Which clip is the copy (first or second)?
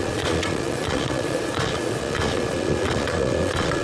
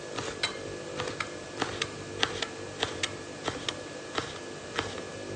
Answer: first